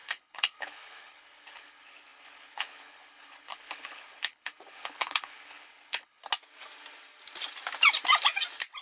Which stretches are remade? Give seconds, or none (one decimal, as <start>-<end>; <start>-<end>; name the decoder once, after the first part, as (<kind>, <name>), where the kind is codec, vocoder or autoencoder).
0.0-6.2 (codec, HILCodec)